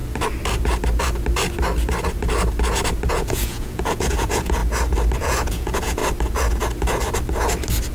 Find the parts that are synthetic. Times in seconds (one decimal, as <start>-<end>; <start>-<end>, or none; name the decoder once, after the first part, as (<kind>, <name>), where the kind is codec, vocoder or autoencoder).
3.1-4.6 (vocoder, Vocos); 5.2-6.0